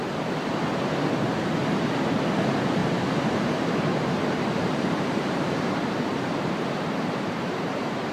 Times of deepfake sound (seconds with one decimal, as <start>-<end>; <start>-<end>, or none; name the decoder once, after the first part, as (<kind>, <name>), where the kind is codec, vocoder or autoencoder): 2.8-8.1 (vocoder, BigVGAN v2)